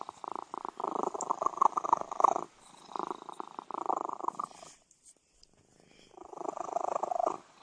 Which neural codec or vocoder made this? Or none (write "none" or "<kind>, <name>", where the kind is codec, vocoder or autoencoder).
none